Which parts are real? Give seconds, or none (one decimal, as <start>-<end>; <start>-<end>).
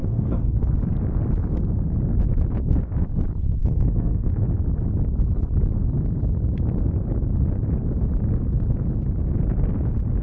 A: 0.6-3.6; 4.3-10.2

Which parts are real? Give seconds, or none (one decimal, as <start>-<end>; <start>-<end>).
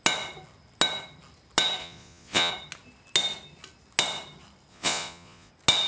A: 0.0-1.8; 2.5-4.7; 5.5-5.9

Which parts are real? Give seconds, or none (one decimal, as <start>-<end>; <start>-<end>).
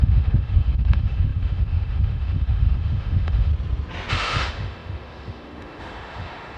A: 3.5-4.1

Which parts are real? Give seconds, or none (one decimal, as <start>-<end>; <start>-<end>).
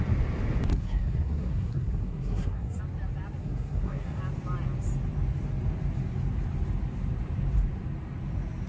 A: 0.0-0.7; 2.8-3.4; 4.2-8.7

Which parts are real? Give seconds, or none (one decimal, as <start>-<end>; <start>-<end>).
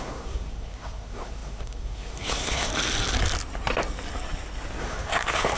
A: 2.7-4.8